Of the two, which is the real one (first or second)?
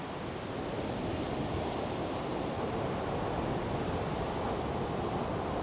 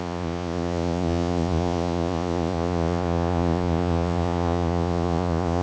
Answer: first